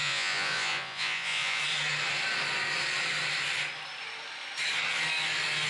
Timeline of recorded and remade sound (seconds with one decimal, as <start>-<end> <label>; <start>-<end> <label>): 0.0-1.6 remade; 1.6-5.7 recorded